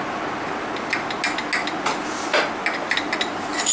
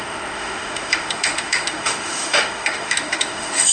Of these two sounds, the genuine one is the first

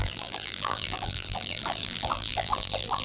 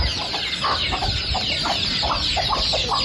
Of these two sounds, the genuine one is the second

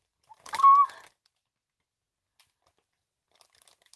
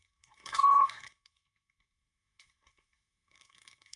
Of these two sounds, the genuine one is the first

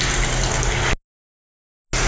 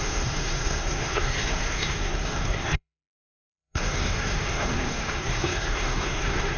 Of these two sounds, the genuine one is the first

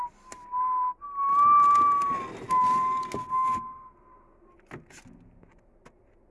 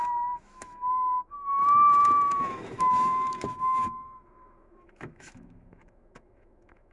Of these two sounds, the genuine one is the first